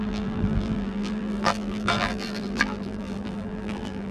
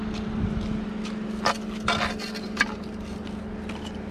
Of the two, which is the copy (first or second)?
first